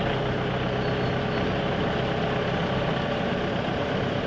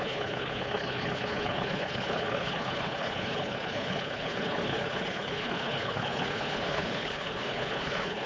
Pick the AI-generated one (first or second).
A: second